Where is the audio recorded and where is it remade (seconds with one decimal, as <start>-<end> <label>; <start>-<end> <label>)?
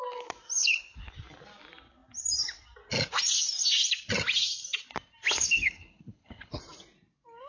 0.0-0.6 recorded; 0.6-1.1 remade; 1.1-5.3 recorded; 5.3-6.6 remade; 6.6-7.5 recorded